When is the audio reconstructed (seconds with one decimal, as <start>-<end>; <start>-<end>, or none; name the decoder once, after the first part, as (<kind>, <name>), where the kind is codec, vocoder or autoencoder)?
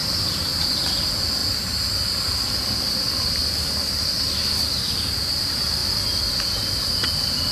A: 0.0-0.8 (vocoder, BigVGAN v2)